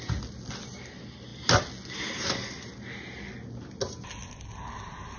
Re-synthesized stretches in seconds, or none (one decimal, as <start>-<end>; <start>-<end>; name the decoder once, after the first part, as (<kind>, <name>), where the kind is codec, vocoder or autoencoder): none